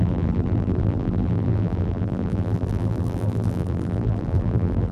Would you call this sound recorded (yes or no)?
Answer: no